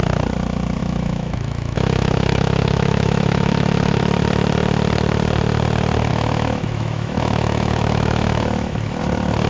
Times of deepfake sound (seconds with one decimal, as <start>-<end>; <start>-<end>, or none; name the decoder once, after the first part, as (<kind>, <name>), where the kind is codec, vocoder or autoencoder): 0.8-4.0 (autoencoder, DAC-VAE); 6.1-9.0